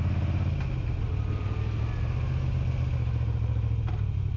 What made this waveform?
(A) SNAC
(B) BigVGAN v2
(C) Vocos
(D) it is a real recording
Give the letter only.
D